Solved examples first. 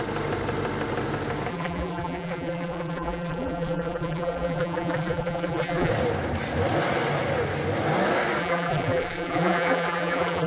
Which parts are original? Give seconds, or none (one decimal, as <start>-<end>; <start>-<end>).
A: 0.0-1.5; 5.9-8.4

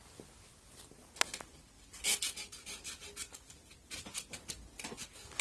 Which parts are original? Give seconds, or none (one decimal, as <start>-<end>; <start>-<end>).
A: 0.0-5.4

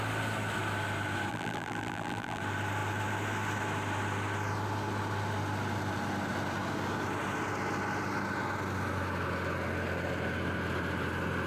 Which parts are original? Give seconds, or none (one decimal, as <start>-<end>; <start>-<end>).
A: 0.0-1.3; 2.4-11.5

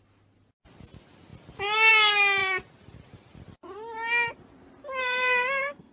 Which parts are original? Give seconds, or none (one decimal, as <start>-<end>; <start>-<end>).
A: 0.0-5.0

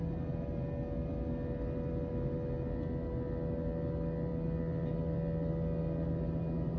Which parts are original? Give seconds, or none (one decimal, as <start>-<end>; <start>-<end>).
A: 0.0-6.8